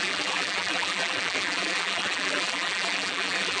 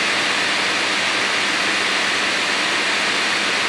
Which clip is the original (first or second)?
second